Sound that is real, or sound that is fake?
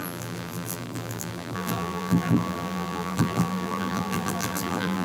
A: fake